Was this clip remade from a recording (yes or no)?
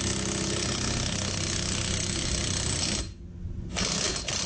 no